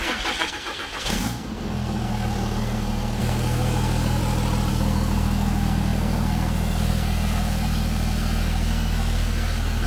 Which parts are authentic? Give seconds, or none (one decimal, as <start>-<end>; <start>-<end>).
4.2-4.7